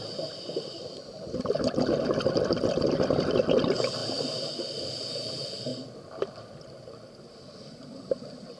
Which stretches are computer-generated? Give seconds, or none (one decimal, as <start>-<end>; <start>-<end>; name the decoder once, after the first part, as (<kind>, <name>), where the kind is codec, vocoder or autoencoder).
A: 0.0-5.7 (vocoder, BigVGAN v2); 6.6-8.6